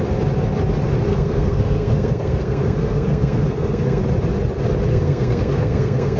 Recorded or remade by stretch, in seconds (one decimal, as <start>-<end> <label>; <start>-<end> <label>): 0.0-1.1 recorded; 1.1-4.0 remade; 4.0-4.9 recorded; 4.9-6.2 remade